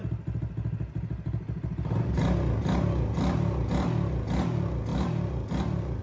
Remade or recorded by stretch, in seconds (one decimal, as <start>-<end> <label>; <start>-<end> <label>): 0.0-6.0 recorded